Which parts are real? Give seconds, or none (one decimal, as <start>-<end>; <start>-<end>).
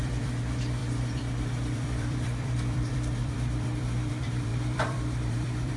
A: none